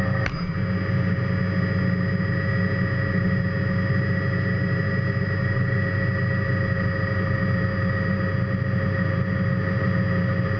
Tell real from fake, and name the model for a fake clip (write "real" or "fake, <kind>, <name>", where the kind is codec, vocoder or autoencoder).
real